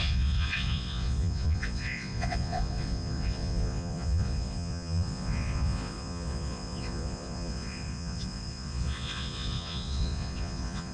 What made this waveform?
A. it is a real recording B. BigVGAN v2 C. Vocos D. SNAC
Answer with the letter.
C